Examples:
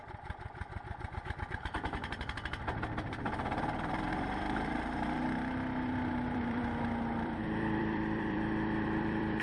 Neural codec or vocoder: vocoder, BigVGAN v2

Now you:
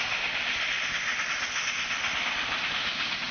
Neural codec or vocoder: none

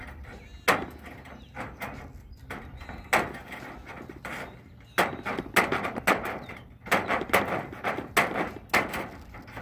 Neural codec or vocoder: none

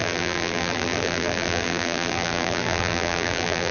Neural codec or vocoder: vocoder, BigVGAN v2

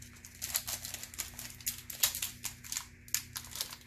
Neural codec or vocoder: none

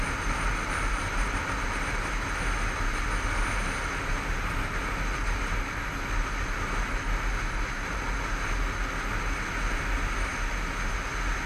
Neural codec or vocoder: none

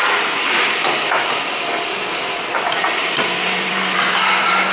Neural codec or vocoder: vocoder, BigVGAN v2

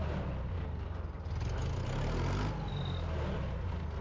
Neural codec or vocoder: none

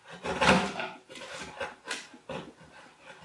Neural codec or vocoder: none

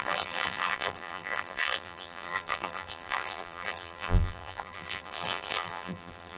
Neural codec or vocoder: vocoder, BigVGAN v2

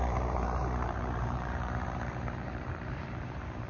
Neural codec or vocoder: vocoder, BigVGAN v2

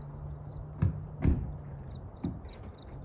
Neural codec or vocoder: none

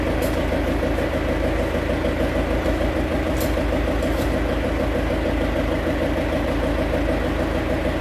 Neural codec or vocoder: none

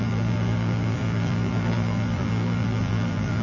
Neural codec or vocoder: vocoder, BigVGAN v2